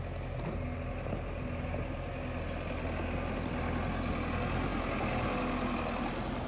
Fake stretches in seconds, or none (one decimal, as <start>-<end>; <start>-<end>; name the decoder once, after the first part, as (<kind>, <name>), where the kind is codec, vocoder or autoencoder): none